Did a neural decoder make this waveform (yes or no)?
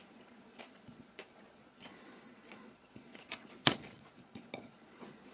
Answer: yes